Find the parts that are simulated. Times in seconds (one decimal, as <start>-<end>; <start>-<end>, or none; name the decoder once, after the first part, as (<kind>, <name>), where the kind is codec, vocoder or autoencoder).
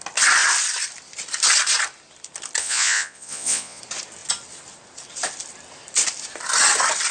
2.6-3.8 (vocoder, Vocos)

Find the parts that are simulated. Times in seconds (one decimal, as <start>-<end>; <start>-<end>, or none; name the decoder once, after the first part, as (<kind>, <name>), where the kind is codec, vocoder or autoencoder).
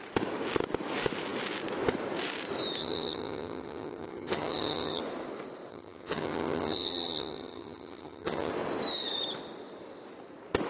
2.8-5.0 (vocoder, HiFi-GAN); 5.7-8.5